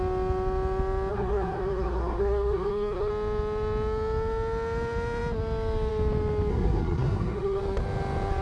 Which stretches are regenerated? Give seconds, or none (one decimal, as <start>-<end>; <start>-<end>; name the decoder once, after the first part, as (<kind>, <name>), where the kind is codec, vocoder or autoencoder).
1.1-3.1 (codec, SNAC); 6.5-7.6